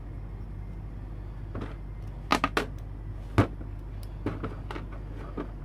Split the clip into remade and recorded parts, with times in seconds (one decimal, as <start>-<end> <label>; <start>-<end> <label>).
0.0-5.6 recorded